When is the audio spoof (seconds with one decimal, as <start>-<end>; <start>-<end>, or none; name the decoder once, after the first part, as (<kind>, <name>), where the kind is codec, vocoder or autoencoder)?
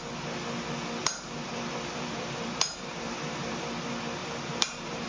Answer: 1.0-3.6 (vocoder, BigVGAN v2); 4.2-5.1